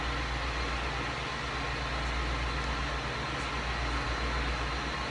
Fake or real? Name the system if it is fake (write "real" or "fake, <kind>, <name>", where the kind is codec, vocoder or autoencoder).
real